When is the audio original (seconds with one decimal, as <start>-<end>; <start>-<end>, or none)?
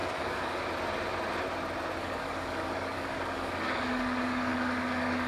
0.6-2.0